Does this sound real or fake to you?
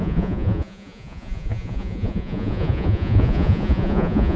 fake